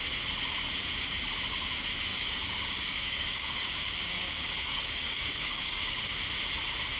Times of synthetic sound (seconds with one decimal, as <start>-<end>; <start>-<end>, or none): 2.1-6.2